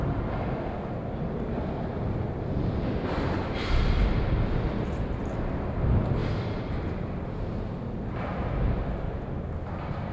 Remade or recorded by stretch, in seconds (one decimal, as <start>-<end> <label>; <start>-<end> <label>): 0.0-10.1 recorded